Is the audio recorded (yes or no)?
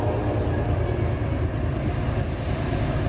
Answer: yes